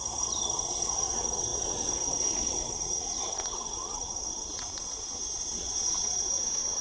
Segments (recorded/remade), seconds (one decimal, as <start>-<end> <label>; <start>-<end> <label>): 0.0-6.8 remade